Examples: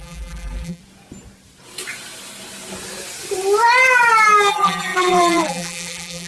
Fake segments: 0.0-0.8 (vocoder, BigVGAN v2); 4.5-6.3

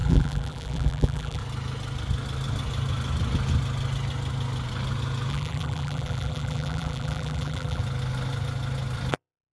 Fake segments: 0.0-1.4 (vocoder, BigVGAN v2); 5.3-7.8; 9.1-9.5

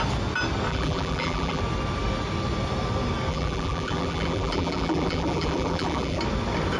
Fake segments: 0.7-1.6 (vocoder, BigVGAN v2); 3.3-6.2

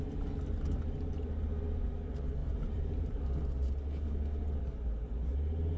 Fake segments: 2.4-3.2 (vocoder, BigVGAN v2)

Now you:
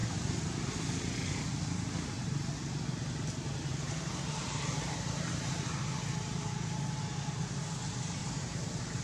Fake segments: 3.7-4.6 (vocoder, BigVGAN v2); 8.2-9.0

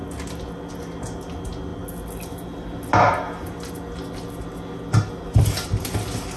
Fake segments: none

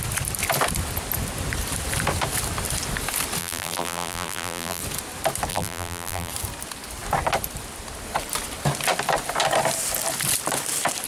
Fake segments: 3.4-4.8 (vocoder, BigVGAN v2); 5.5-6.3